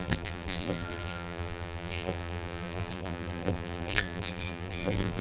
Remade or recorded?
remade